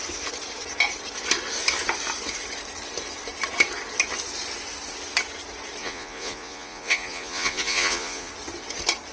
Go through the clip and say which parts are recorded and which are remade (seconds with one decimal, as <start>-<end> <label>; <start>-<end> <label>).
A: 0.0-5.8 recorded; 5.8-8.3 remade; 8.3-9.1 recorded

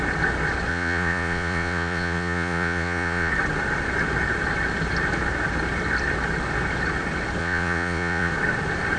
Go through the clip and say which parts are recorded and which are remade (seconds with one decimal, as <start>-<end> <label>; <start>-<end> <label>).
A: 0.0-0.7 recorded; 0.7-3.3 remade; 3.3-7.4 recorded; 7.4-8.3 remade; 8.3-9.0 recorded

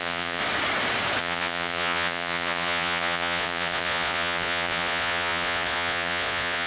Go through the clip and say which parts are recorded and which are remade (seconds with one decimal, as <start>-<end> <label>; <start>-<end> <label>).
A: 0.0-0.4 remade; 0.4-1.2 recorded; 1.2-6.7 remade

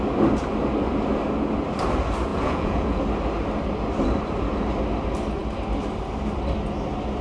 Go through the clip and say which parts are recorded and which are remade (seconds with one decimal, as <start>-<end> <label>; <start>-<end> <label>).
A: 0.0-2.3 recorded; 2.3-3.0 remade; 3.0-7.2 recorded

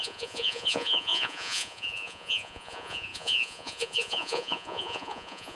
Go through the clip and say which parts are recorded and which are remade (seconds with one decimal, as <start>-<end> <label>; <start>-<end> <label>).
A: 0.0-5.6 remade